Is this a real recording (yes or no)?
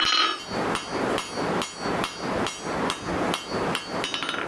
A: yes